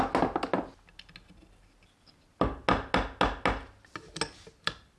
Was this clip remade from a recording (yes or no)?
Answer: no